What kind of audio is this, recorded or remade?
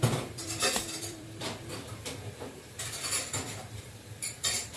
remade